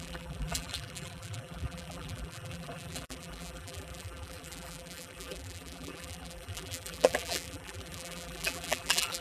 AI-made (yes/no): yes